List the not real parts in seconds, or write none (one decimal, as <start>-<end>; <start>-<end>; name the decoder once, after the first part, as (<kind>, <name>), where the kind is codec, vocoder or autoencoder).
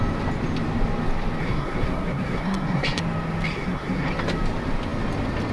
1.4-3.0 (codec, SNAC); 3.5-4.1